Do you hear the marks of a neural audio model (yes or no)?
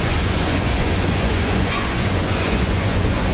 yes